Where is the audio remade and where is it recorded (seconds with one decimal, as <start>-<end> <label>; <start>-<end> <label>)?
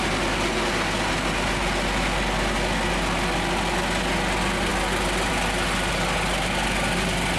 0.0-7.4 recorded